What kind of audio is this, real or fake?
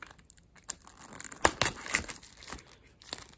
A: real